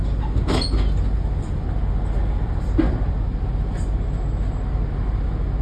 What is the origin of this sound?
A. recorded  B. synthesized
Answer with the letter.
A